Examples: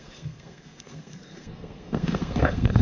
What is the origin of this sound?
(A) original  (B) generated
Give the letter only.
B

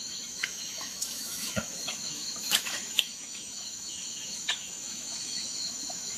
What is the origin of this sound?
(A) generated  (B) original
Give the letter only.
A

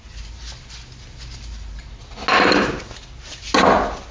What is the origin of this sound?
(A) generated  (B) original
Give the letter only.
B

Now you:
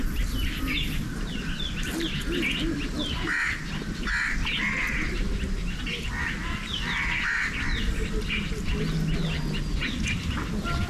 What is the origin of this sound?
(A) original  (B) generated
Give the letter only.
A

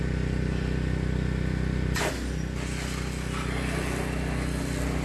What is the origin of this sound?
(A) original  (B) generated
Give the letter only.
A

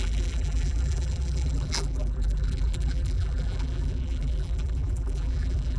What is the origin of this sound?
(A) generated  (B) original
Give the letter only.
A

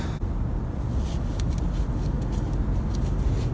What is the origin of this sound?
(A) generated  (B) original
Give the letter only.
B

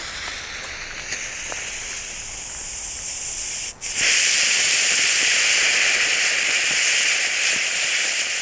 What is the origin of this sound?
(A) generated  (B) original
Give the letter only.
B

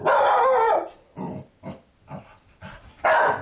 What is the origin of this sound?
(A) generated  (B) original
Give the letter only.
B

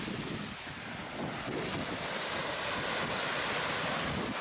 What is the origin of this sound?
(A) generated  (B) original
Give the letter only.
B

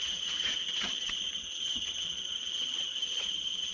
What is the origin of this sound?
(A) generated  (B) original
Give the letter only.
A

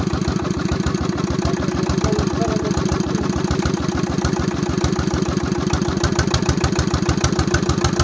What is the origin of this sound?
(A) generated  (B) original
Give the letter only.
B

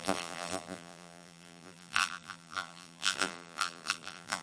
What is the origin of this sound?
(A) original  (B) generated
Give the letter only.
B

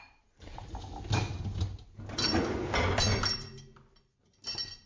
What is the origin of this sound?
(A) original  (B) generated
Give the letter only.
A